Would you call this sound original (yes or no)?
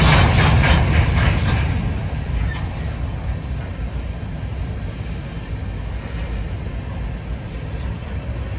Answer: yes